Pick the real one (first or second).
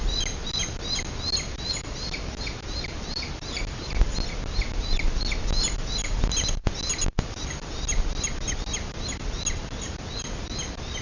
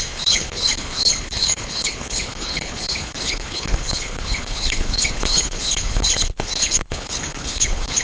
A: first